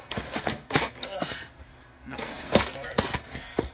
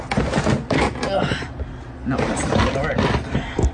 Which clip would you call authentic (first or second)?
second